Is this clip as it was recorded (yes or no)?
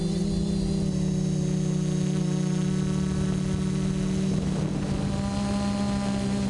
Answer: yes